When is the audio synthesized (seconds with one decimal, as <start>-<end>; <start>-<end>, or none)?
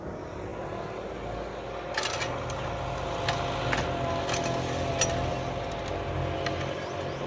none